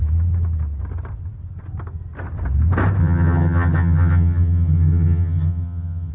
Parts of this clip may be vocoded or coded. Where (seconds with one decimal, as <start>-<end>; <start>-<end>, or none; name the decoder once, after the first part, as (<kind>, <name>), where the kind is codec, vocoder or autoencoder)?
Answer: 3.0-6.1 (vocoder, HiFi-GAN)